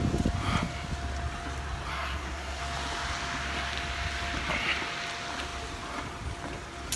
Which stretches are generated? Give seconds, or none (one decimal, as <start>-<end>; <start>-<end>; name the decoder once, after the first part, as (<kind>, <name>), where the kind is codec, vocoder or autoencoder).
1.9-2.6 (codec, SNAC)